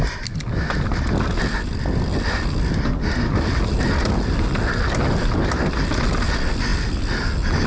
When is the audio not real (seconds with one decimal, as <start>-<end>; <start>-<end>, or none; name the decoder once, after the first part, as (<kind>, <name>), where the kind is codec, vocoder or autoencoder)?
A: none